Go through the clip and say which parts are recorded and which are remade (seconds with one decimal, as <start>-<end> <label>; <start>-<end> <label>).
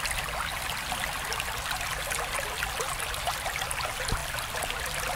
0.0-5.2 recorded